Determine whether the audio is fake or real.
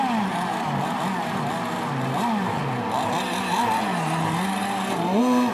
real